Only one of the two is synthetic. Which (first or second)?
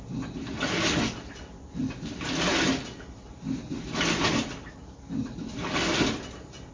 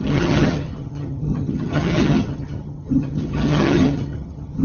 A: second